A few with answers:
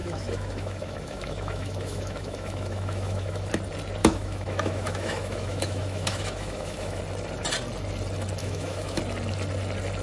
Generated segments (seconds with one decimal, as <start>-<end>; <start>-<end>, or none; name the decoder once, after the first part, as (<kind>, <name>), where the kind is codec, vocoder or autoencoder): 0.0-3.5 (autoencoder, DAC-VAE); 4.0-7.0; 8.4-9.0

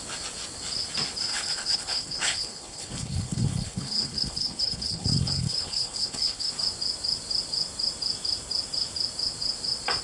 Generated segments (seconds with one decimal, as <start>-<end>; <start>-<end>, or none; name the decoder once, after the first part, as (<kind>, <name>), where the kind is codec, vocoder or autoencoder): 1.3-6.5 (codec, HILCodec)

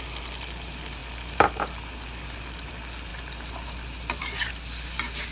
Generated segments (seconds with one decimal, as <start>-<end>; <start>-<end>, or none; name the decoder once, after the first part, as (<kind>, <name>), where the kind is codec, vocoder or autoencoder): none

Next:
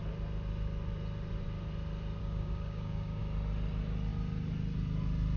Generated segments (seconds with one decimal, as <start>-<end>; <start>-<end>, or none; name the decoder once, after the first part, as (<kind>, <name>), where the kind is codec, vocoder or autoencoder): 2.2-3.2 (codec, DAC)